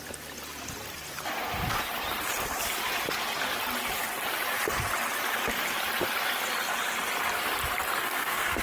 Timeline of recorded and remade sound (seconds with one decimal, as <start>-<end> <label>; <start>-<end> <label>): 0.0-8.0 recorded; 8.0-8.6 remade